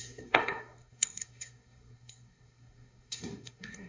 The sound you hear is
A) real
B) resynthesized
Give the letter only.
B